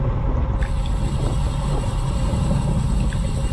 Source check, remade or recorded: recorded